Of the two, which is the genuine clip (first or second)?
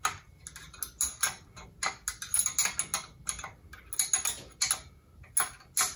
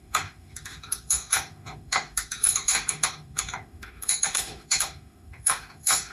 first